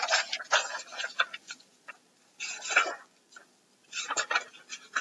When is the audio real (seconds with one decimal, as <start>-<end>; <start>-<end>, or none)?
0.0-1.4; 1.9-2.8; 3.3-5.0